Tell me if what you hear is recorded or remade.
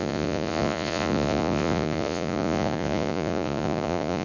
remade